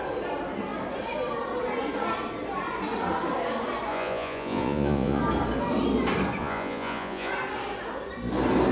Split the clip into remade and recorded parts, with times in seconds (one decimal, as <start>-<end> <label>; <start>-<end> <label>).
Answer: 0.0-3.9 recorded; 3.9-5.2 remade; 5.2-6.4 recorded; 6.4-7.3 remade; 7.3-8.7 recorded